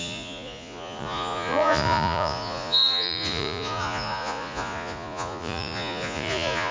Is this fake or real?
fake